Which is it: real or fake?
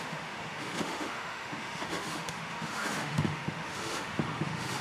fake